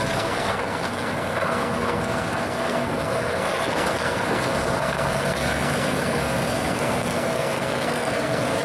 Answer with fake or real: fake